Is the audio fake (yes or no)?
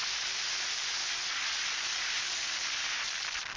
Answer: no